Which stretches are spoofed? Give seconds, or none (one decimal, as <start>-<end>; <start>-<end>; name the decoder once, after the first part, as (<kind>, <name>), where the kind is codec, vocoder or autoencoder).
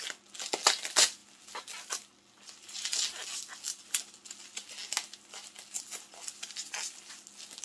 none